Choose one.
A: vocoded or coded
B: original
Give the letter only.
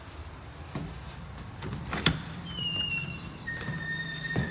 A